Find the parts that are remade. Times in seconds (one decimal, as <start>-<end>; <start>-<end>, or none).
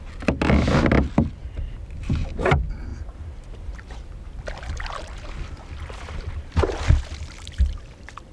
1.4-2.4; 2.9-6.6